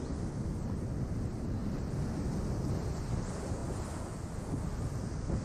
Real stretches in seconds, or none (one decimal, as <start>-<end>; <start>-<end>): 0.0-1.6; 2.4-5.4